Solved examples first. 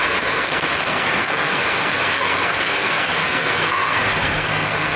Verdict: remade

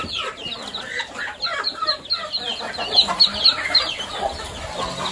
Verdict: recorded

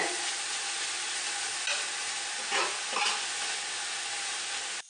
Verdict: recorded